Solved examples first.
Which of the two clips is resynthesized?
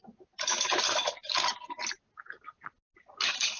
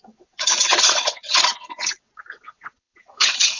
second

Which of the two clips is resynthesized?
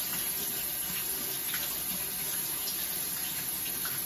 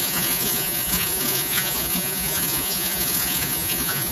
second